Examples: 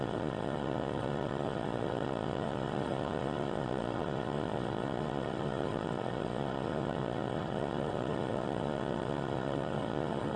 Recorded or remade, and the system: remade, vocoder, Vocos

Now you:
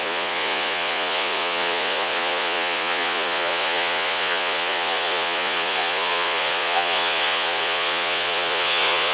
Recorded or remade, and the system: remade, vocoder, Vocos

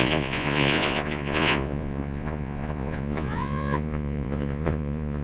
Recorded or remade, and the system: remade, vocoder, Vocos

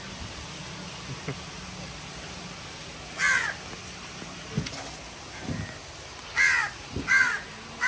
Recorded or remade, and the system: recorded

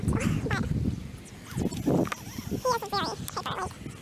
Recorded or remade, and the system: recorded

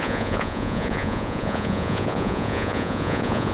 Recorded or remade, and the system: remade, vocoder, Vocos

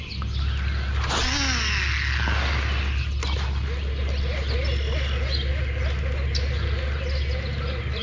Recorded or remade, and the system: recorded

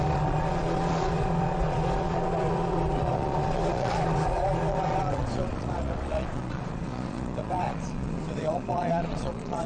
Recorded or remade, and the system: remade, vocoder, Vocos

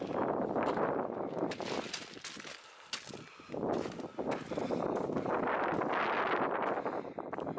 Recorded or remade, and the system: recorded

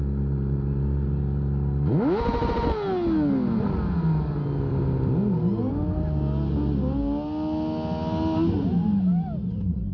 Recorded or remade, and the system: recorded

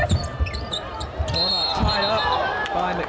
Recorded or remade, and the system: recorded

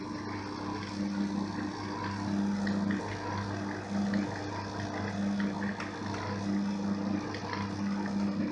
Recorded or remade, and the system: recorded